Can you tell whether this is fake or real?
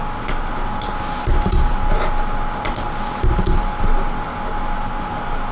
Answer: real